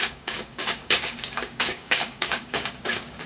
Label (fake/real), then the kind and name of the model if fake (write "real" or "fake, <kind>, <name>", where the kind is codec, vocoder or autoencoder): fake, codec, DAC